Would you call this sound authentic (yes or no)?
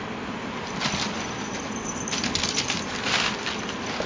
yes